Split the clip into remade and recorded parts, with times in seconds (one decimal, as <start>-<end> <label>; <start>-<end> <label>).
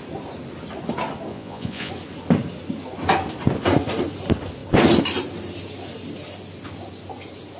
0.0-1.3 recorded; 1.3-1.9 remade; 1.9-7.6 recorded